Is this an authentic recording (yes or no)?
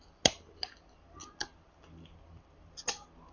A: yes